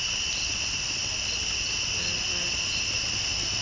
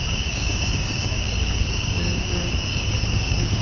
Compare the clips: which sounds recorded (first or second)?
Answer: first